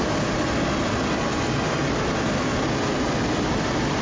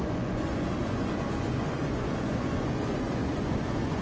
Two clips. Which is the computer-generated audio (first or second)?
second